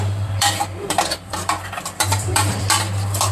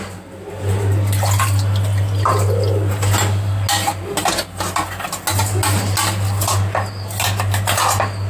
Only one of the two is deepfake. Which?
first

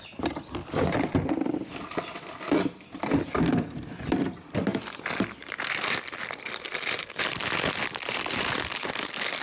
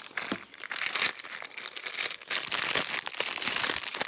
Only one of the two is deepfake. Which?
first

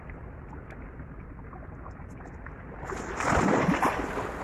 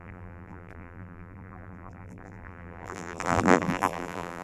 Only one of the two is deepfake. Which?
second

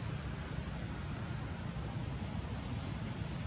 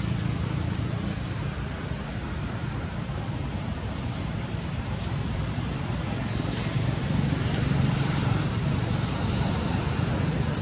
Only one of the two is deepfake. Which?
second